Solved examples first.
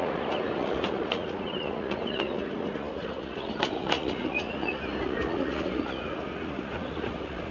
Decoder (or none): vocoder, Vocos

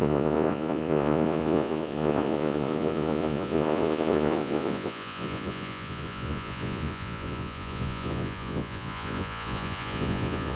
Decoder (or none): vocoder, Vocos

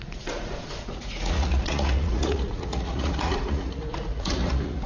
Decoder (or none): vocoder, Vocos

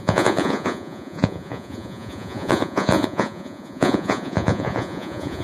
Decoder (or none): vocoder, Vocos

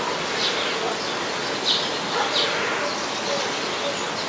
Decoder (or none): none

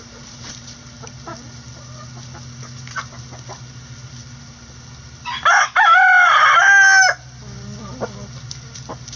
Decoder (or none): none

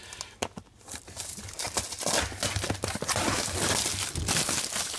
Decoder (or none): none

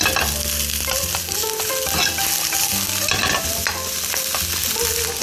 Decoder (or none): none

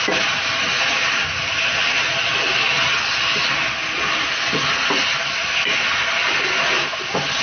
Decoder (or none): none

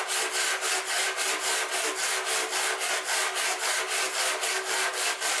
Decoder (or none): none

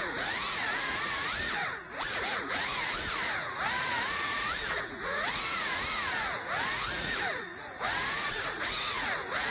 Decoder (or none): vocoder, Vocos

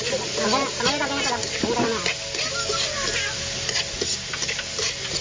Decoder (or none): none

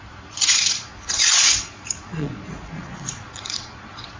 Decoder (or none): vocoder, Vocos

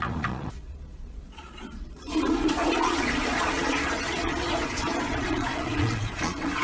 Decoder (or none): vocoder, Vocos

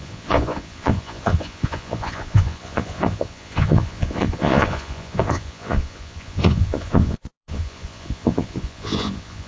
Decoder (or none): vocoder, Vocos